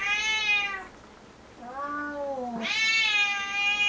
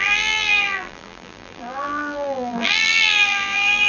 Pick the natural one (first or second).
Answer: first